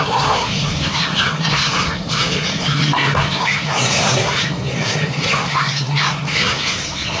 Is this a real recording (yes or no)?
no